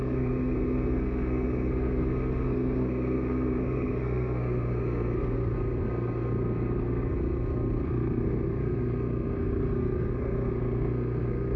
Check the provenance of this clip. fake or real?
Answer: fake